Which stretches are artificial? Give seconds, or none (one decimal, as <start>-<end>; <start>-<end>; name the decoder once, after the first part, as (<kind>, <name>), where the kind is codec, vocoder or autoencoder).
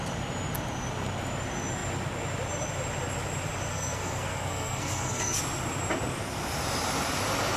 3.7-5.4 (codec, SNAC)